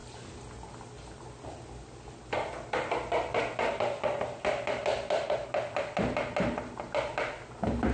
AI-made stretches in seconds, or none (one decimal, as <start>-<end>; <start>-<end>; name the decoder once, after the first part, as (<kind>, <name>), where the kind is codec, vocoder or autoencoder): none